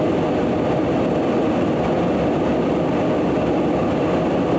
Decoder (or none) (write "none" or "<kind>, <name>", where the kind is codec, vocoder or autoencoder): none